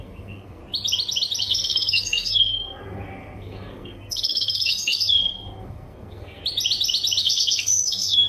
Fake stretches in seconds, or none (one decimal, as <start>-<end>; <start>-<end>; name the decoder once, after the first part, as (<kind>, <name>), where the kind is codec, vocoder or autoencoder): 0.0-0.6 (codec, SNAC); 1.4-6.4; 7.2-8.3